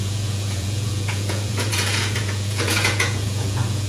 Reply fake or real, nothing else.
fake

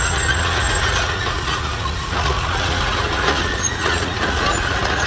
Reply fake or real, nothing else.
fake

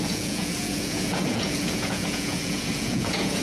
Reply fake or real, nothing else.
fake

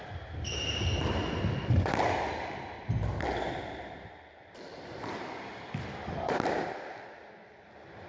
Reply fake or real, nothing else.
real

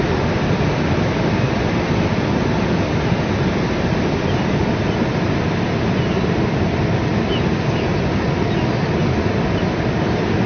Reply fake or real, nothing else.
real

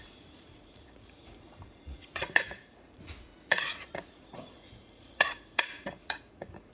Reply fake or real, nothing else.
fake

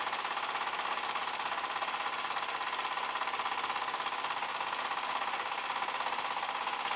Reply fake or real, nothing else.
real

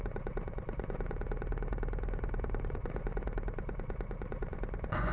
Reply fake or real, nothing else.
fake